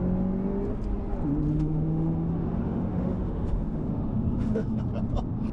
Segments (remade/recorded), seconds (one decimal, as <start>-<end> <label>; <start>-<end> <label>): 0.0-1.5 recorded; 1.5-4.8 remade; 4.8-5.5 recorded